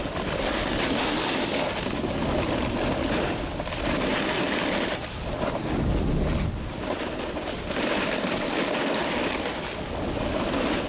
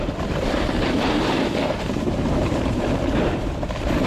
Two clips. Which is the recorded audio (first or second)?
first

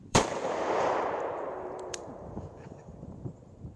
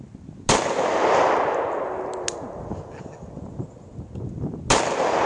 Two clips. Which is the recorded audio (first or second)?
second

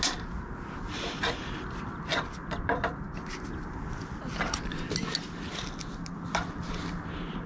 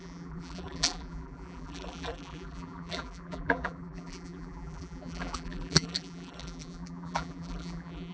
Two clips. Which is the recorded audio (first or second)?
first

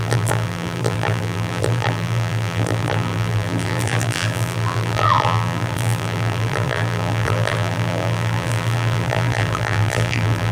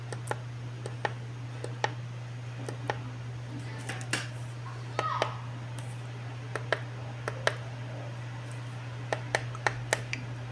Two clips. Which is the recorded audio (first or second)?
second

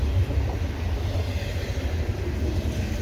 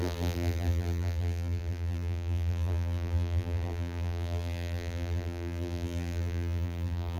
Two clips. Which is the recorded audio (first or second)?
first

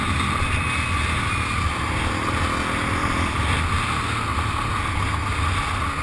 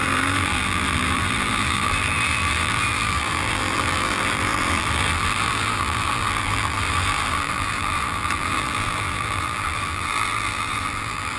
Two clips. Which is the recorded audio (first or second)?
first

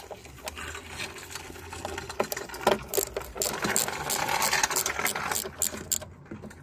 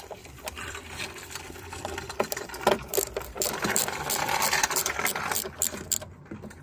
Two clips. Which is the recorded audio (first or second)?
first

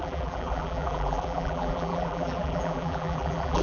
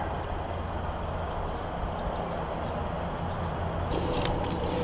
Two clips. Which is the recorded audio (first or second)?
second